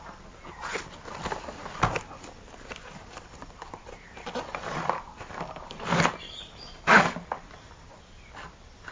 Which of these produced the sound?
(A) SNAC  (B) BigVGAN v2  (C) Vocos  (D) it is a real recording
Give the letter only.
D